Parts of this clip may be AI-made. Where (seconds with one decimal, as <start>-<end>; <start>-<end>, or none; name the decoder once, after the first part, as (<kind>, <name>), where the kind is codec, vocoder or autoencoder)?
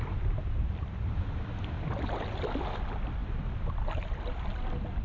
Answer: none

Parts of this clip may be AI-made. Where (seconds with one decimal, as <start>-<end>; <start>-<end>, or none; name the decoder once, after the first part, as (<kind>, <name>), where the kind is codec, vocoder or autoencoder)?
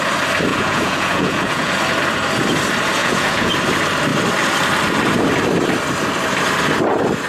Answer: 0.5-1.7 (vocoder, Vocos); 3.0-3.5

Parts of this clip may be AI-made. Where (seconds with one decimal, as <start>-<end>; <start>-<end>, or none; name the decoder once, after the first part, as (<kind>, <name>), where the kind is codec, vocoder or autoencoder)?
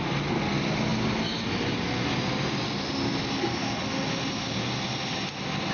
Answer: none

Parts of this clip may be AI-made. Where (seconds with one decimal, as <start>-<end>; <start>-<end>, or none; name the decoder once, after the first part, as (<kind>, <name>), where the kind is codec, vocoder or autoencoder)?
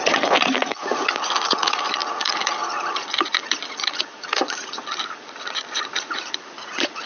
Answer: 0.0-7.1 (vocoder, Vocos)